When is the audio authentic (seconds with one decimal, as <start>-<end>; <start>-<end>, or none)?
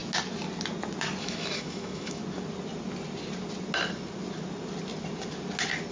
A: 0.0-1.2; 2.2-5.9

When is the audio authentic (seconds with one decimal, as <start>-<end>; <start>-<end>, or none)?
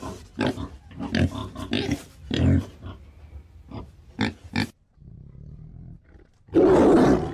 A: 0.0-7.3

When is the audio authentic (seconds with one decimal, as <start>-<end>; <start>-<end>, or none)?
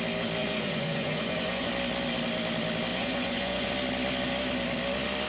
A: 0.0-0.4; 1.7-2.9; 3.7-5.3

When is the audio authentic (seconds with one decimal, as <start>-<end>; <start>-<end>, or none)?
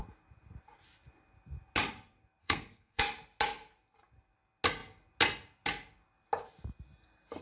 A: 0.0-2.4; 3.0-7.4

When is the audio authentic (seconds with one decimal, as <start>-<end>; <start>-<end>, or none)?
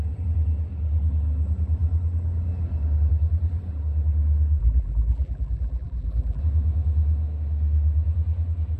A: 0.0-4.6; 6.4-8.8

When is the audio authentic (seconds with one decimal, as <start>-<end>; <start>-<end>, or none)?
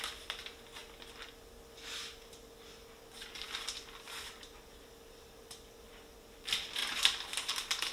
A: 0.0-7.9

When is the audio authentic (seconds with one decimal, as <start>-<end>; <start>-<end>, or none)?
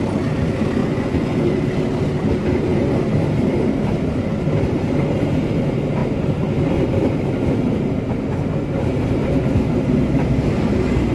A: 0.0-0.8; 1.6-11.1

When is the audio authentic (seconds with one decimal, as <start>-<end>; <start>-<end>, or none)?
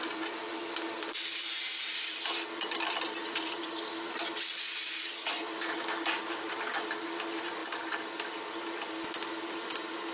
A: 0.0-10.1